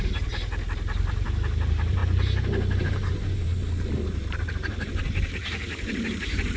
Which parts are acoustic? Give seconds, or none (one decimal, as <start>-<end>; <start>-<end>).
2.0-2.8; 3.5-4.1